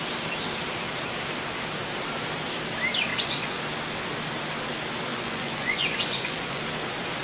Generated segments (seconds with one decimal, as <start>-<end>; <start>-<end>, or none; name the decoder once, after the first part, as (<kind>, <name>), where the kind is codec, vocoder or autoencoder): 3.1-3.6 (vocoder, Vocos); 5.1-6.6